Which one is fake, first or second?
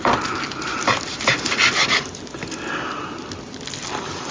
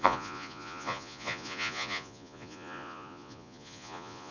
second